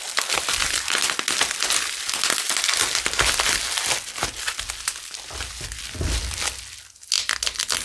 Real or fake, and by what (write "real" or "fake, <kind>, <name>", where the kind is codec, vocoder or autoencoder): real